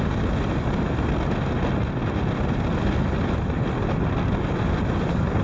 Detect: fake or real real